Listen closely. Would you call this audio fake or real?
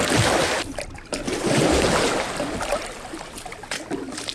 real